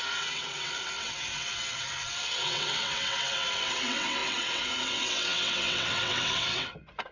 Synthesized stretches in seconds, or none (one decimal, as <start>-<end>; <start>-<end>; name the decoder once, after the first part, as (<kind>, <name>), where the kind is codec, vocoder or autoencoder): 0.0-7.1 (vocoder, WaveNeXt)